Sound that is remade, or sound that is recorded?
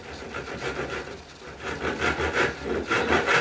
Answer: recorded